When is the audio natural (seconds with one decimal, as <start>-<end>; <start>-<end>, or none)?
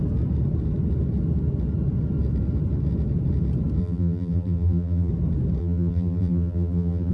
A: 0.0-3.8; 5.1-5.6